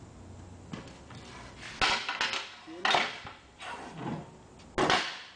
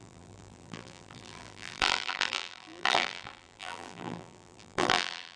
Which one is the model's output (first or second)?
second